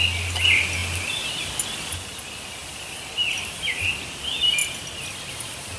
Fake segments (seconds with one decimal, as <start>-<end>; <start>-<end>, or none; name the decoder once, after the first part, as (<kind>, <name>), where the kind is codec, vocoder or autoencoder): none